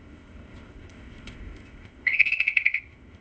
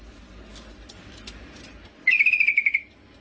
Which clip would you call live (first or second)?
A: second